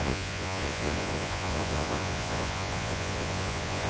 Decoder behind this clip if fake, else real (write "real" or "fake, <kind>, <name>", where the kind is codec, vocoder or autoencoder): fake, vocoder, Vocos